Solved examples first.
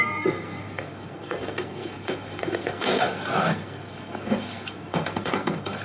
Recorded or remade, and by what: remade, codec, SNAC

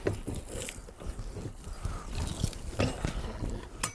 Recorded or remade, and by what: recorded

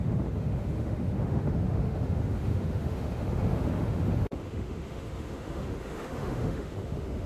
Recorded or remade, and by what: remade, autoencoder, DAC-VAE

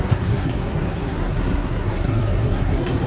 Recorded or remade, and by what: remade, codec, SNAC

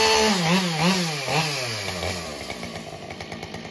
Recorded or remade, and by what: recorded